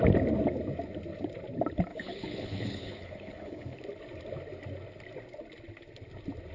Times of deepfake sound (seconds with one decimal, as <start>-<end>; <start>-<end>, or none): 1.9-3.8